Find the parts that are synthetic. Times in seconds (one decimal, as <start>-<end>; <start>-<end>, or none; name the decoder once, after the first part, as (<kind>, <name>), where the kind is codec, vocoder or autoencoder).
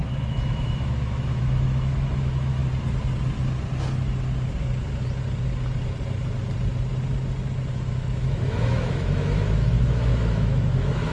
0.0-2.6 (autoencoder, DAC-VAE); 7.7-11.1